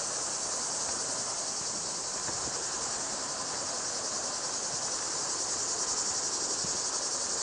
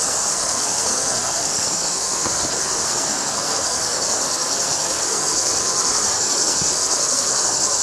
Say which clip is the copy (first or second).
second